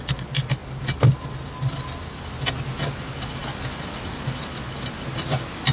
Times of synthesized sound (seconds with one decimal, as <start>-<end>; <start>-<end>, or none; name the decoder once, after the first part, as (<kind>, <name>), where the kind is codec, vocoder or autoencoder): none